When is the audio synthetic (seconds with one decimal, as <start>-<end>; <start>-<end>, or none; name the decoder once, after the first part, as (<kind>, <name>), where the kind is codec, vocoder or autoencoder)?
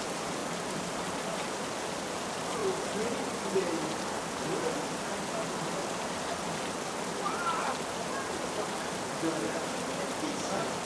none